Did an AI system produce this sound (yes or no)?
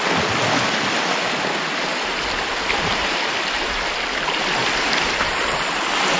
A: no